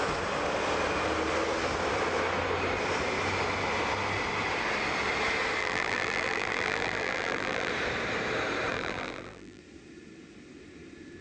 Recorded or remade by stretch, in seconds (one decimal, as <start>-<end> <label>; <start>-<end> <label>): 0.0-5.6 recorded; 5.6-7.7 remade; 7.7-8.7 recorded; 8.7-9.6 remade; 9.6-11.2 recorded

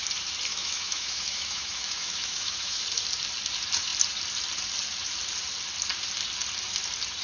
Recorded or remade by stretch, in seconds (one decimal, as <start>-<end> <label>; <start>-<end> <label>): 0.0-0.5 recorded; 0.5-2.8 remade; 2.8-7.2 recorded

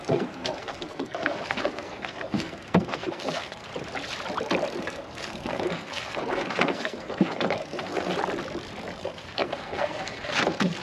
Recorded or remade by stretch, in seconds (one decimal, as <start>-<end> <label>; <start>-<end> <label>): 0.0-3.7 remade; 3.7-4.8 recorded; 4.8-8.1 remade; 8.1-9.0 recorded; 9.0-10.8 remade

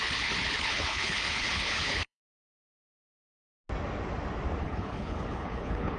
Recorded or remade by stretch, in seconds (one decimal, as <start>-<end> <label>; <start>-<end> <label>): 0.0-2.2 remade; 2.2-4.6 recorded; 4.6-6.0 remade

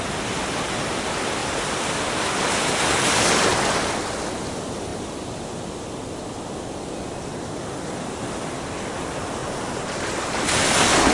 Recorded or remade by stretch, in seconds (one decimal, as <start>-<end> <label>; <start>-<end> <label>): 0.0-1.4 recorded; 1.4-4.0 remade; 4.0-11.1 recorded

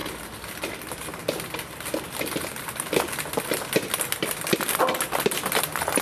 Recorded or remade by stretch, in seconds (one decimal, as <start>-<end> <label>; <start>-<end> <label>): 0.0-6.0 recorded